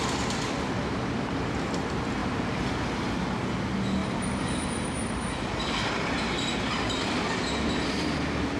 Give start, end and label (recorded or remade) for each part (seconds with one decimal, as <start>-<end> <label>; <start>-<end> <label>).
0.0-2.2 recorded; 2.2-2.7 remade; 2.7-4.0 recorded; 4.0-7.0 remade; 7.0-8.6 recorded